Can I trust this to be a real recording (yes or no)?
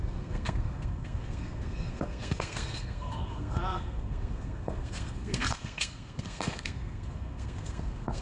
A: no